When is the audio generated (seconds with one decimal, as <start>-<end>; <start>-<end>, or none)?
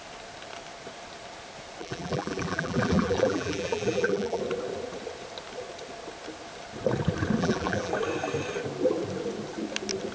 1.8-4.4; 7.4-7.9